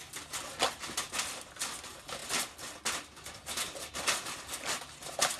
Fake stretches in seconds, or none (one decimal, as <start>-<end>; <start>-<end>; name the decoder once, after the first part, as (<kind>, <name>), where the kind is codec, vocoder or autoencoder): none